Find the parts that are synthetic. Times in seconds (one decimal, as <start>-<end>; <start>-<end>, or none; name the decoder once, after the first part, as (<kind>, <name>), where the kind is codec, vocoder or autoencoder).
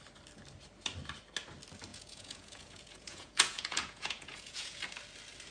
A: 1.9-4.8 (vocoder, Vocos)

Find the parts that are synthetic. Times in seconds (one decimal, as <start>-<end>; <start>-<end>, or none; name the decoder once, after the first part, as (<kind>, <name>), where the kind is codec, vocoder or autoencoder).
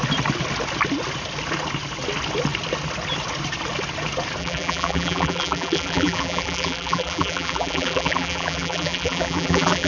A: 4.4-9.9 (vocoder, BigVGAN v2)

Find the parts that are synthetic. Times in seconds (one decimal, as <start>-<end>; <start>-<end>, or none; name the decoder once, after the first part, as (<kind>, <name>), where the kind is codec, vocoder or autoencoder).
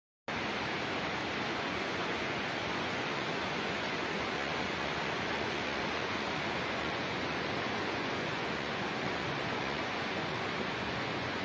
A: 1.5-11.4 (vocoder, Vocos)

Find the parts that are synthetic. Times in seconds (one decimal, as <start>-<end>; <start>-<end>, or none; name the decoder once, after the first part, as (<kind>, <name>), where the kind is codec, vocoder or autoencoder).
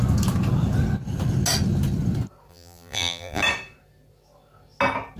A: 2.5-3.4 (vocoder, BigVGAN v2)